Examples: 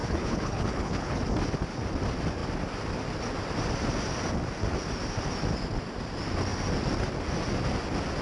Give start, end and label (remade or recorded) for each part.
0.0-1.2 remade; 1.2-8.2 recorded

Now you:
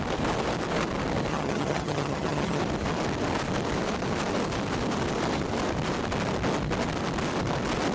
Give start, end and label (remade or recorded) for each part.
0.0-1.3 recorded; 1.3-2.6 remade; 2.6-7.9 recorded

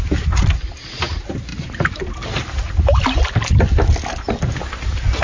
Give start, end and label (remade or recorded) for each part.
0.0-5.2 recorded

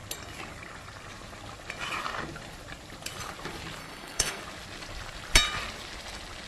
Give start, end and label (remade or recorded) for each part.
0.0-3.8 recorded; 3.8-4.4 remade; 4.4-6.5 recorded

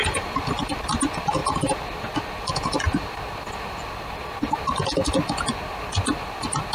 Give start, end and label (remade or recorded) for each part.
0.0-6.7 recorded

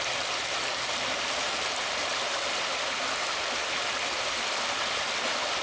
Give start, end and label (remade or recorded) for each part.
0.0-5.6 recorded

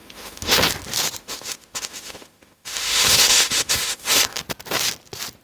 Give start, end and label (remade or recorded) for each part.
0.0-0.6 remade; 0.6-1.2 recorded; 1.2-4.4 remade; 4.4-5.4 recorded